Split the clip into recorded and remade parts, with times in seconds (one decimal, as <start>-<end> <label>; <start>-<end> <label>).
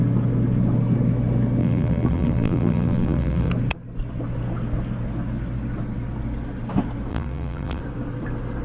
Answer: 0.0-1.6 recorded; 1.6-3.5 remade; 3.5-7.1 recorded; 7.1-7.8 remade; 7.8-8.6 recorded